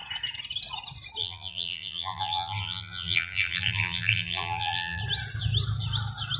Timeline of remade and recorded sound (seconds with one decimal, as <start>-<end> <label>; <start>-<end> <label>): 0.0-1.2 recorded; 1.2-5.0 remade; 5.0-6.4 recorded